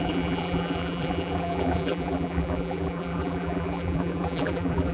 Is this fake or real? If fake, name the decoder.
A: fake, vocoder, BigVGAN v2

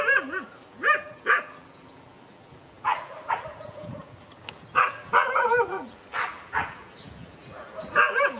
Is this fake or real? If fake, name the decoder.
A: fake, vocoder, BigVGAN v2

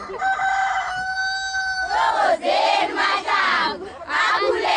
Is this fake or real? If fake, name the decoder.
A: real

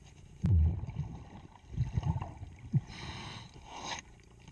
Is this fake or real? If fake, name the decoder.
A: real